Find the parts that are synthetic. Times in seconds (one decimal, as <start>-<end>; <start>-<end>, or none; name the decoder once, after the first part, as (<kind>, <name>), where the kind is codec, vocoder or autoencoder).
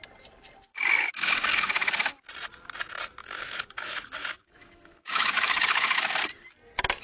0.7-2.1 (autoencoder, DAC-VAE); 3.2-6.2